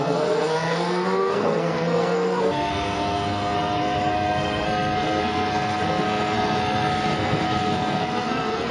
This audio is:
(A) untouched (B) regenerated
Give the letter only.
B